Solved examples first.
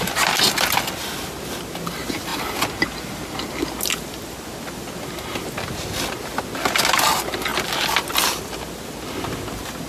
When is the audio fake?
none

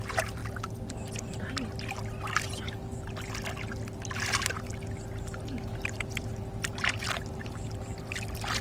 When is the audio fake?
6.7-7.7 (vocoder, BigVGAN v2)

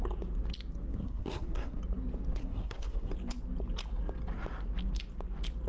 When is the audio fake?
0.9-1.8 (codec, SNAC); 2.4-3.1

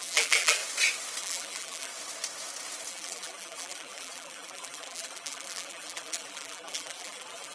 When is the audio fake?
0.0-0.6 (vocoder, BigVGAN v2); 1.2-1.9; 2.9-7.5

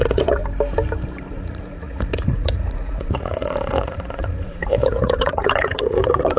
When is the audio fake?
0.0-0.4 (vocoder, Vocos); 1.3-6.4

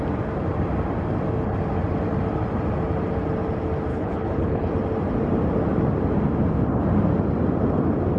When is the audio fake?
3.9-4.7 (codec, HILCodec)

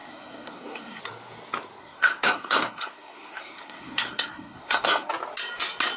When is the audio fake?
0.0-1.0 (codec, SNAC); 1.8-5.1

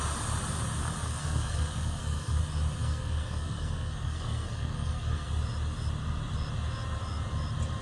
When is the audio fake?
0.8-2.4 (codec, SNAC); 2.8-5.3